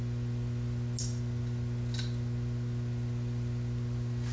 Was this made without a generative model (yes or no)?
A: yes